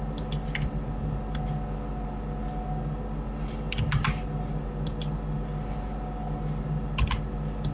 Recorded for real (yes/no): yes